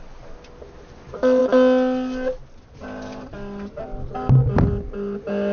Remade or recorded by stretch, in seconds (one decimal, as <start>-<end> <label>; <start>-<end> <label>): 0.0-5.5 recorded